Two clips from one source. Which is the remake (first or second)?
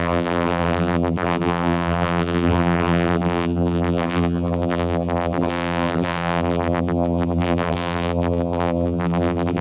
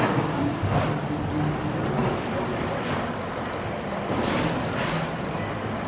first